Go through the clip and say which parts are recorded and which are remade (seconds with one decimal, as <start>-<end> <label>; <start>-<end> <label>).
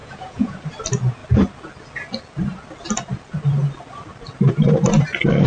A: 0.0-0.6 remade; 0.6-5.5 recorded